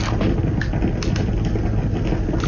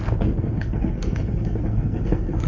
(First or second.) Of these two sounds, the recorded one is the first